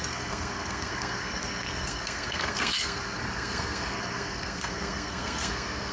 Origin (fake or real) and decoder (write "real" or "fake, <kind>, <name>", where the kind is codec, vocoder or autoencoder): fake, codec, SNAC